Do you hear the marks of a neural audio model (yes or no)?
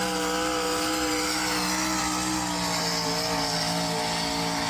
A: no